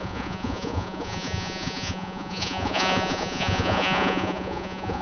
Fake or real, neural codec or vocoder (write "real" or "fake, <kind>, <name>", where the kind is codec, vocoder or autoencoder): fake, vocoder, Vocos